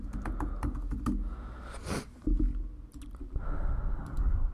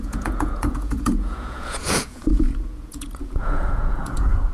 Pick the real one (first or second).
first